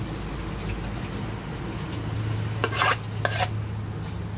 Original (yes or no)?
yes